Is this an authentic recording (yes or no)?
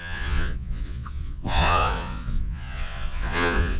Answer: no